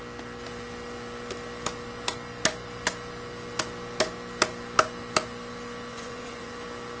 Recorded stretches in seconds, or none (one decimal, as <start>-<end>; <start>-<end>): 0.0-5.9; 6.5-7.0